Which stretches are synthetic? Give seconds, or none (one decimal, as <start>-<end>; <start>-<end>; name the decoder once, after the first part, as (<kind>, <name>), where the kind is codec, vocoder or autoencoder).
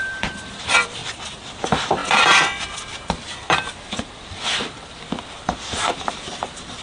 0.0-1.0 (vocoder, BigVGAN v2); 1.6-6.8